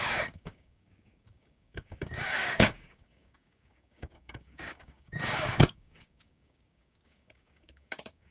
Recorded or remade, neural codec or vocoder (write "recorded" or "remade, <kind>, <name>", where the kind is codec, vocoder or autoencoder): remade, codec, DAC